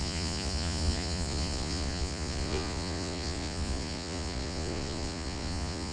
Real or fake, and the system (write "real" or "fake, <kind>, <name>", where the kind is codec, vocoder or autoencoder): fake, vocoder, Vocos